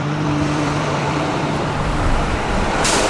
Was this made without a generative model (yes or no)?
no